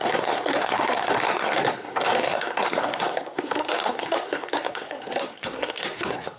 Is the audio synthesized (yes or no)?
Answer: yes